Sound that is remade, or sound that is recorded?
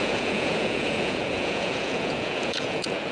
remade